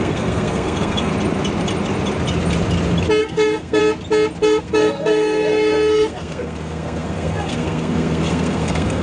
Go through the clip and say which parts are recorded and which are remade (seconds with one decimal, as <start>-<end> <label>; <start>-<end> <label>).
0.0-1.1 remade; 1.1-3.2 recorded; 3.2-3.8 remade; 3.8-4.4 recorded; 4.4-9.0 remade